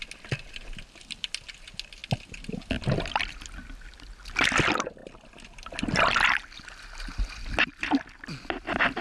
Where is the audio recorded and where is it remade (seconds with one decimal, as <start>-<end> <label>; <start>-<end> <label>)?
0.0-9.0 recorded